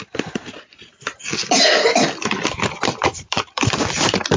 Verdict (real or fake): fake